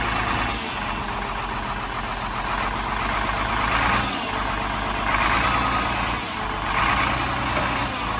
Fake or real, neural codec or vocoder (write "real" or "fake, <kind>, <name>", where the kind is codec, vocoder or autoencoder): real